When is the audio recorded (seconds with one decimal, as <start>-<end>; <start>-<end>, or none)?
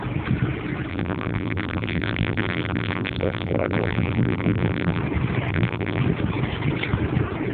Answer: 0.0-0.9; 5.0-5.5; 6.0-7.5